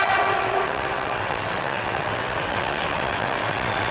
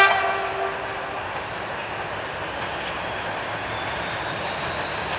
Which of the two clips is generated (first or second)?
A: first